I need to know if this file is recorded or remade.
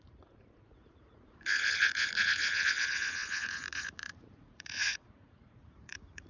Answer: remade